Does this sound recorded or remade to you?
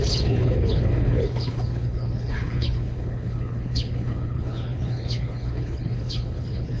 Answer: remade